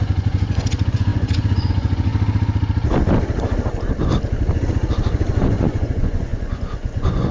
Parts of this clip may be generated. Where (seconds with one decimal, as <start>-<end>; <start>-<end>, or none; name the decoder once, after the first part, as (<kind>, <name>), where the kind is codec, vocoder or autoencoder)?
0.0-2.1 (vocoder, Vocos); 5.2-7.3